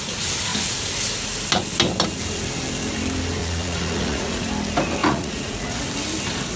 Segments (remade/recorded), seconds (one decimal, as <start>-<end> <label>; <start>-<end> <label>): 0.0-3.4 recorded; 3.4-4.5 remade; 4.5-5.0 recorded; 5.0-5.8 remade; 5.8-6.6 recorded